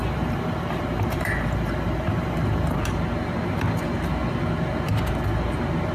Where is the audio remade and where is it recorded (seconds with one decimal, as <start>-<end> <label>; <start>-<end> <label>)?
0.0-2.8 remade; 2.8-5.9 recorded